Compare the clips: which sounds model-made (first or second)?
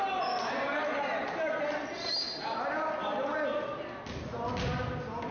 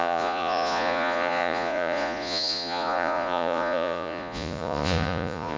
second